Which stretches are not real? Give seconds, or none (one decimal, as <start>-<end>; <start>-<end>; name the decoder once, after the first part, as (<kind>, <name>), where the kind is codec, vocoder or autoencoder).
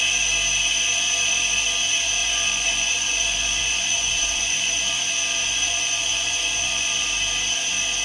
2.2-5.0 (vocoder, Vocos); 5.4-7.1